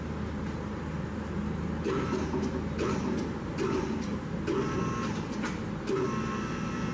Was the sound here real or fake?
real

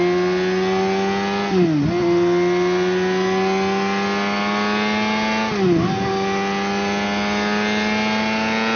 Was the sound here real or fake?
real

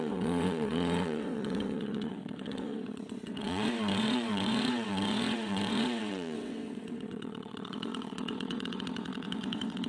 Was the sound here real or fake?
fake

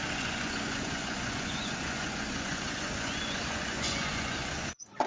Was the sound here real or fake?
fake